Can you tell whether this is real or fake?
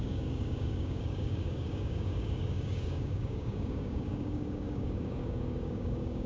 fake